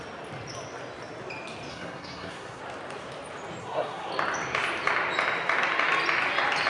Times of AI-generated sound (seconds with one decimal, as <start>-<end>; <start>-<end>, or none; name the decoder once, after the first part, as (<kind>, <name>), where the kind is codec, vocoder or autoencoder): 1.7-2.6 (codec, SNAC); 3.6-4.1